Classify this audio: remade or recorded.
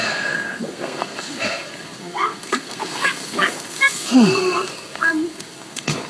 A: remade